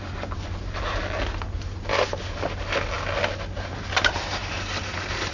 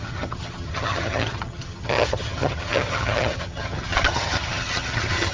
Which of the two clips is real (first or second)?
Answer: first